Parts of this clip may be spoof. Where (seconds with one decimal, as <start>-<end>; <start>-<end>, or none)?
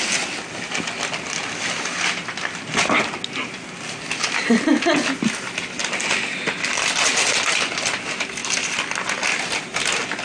none